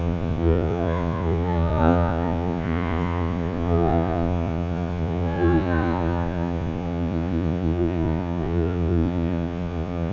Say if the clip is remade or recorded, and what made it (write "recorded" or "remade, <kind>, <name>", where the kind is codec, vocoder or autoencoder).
remade, vocoder, Vocos